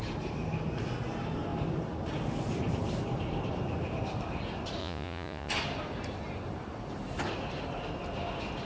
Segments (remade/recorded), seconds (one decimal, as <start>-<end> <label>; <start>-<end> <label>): 0.0-4.8 recorded; 4.8-5.5 remade; 5.5-8.7 recorded